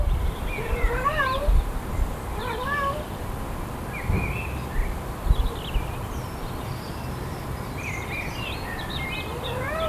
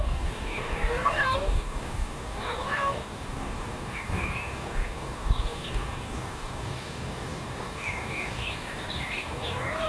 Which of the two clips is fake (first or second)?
second